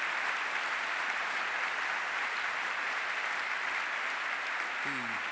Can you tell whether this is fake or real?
real